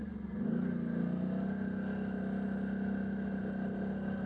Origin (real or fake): real